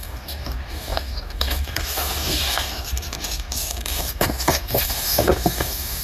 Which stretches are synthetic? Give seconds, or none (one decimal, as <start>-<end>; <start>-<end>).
0.0-6.0